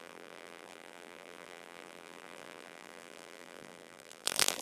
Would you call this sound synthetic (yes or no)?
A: yes